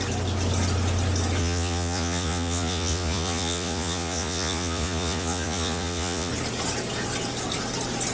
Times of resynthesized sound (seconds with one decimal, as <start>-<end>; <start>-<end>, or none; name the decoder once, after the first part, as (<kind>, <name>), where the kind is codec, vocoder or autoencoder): 1.4-6.3 (vocoder, Vocos)